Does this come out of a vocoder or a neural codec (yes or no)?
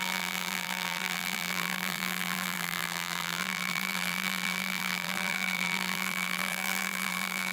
yes